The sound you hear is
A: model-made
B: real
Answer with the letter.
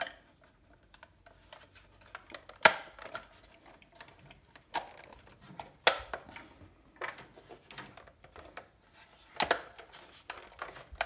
B